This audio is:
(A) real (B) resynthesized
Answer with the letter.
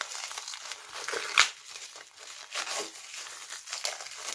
A